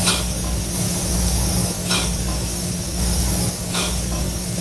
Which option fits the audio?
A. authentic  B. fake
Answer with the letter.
B